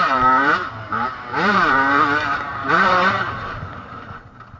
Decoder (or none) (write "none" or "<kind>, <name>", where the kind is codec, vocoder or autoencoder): vocoder, BigVGAN v2